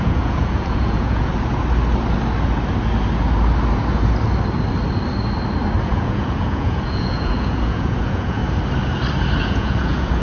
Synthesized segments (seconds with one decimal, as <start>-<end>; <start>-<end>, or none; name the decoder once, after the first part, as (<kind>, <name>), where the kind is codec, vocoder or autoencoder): 0.0-1.3 (vocoder, Vocos); 5.8-8.4; 9.4-10.2